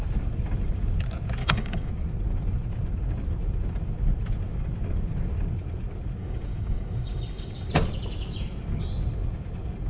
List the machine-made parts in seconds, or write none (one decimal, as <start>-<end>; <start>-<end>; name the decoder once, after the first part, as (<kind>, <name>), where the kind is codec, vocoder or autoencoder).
1.4-1.9 (codec, DAC); 6.2-7.7